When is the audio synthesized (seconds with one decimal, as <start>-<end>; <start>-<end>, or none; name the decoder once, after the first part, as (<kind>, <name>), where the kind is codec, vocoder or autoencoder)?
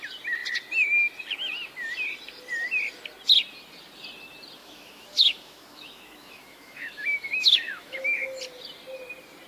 4.6-8.4 (autoencoder, DAC-VAE)